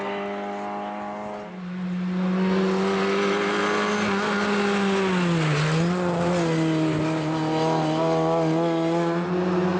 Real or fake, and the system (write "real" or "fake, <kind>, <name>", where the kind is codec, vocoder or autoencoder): real